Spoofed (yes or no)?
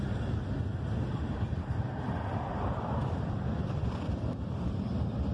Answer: yes